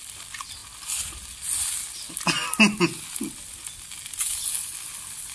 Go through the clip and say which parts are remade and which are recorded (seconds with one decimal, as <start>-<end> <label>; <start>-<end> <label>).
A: 0.0-5.3 recorded